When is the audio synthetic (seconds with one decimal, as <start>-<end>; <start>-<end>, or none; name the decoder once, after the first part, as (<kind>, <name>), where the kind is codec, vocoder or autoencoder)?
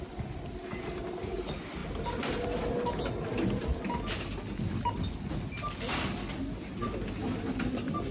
none